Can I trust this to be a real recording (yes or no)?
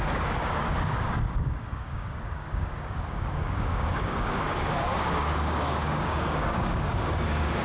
no